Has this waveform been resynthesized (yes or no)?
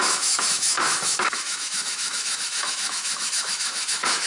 yes